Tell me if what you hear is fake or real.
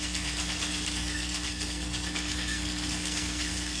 fake